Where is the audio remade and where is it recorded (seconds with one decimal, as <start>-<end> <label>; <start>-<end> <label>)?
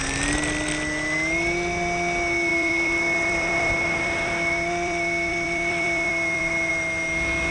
0.0-2.5 recorded; 2.5-6.7 remade; 6.7-7.5 recorded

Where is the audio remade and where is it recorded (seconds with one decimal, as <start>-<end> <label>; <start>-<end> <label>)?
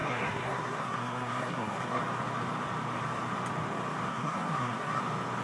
0.0-2.0 remade; 2.0-4.1 recorded; 4.1-5.0 remade; 5.0-5.4 recorded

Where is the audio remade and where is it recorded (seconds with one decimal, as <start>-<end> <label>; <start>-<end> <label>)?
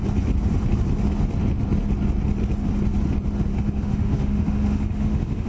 0.0-3.5 recorded; 3.5-5.5 remade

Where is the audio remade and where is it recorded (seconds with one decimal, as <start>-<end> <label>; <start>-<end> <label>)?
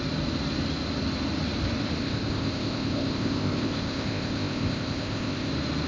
0.0-2.0 recorded; 2.0-5.5 remade; 5.5-5.9 recorded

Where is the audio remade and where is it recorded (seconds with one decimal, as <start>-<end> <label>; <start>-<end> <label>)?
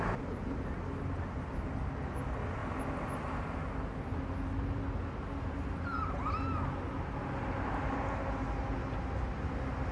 0.0-9.9 recorded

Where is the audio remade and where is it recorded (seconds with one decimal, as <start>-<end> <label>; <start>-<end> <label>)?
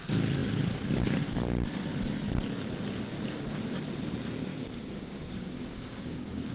0.0-4.5 recorded; 4.5-6.5 remade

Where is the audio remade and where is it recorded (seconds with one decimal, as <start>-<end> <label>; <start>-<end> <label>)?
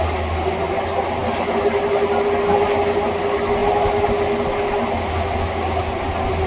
0.0-6.5 recorded